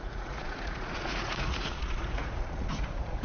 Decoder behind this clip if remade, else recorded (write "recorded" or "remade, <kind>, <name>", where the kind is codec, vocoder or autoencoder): remade, vocoder, Vocos